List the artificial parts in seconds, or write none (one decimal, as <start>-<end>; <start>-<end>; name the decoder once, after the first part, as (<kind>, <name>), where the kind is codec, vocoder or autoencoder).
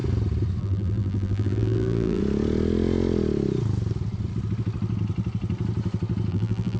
0.6-2.2 (vocoder, BigVGAN v2); 6.3-6.8